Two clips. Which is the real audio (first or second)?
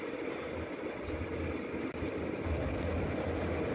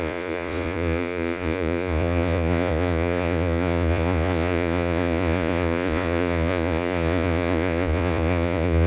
first